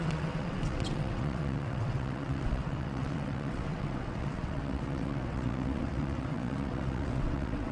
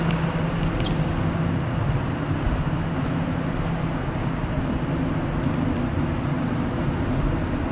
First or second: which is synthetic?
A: first